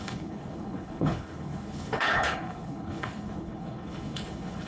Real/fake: fake